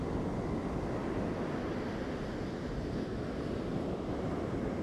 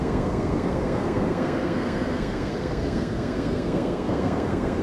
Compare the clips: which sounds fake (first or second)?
second